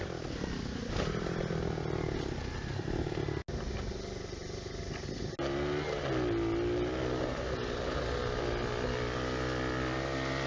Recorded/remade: recorded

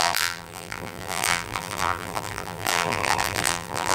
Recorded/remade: remade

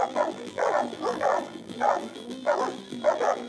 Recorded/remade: remade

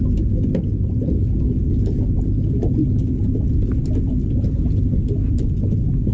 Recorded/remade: recorded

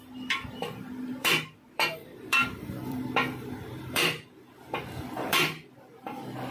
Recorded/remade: remade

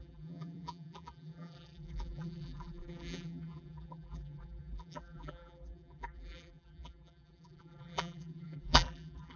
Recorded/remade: remade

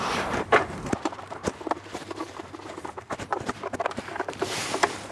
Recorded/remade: remade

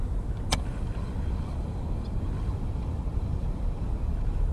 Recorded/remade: recorded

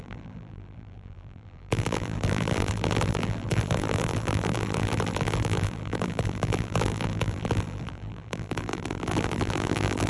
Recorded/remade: remade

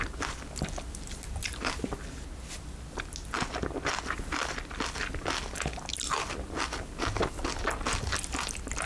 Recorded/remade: recorded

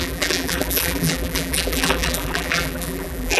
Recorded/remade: remade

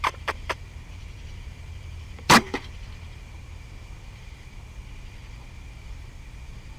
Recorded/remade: remade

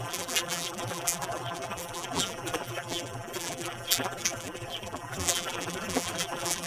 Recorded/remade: remade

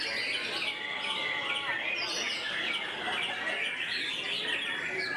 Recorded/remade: recorded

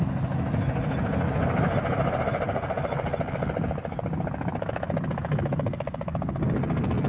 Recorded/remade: recorded